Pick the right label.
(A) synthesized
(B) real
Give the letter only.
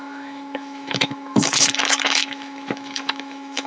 A